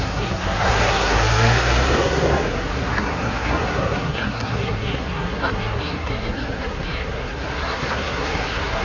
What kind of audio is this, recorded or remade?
remade